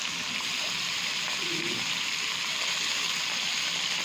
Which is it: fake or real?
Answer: real